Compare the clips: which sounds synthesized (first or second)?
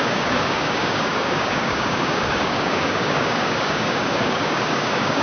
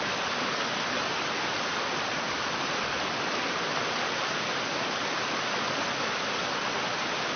first